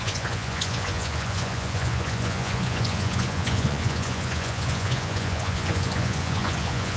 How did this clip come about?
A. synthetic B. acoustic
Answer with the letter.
A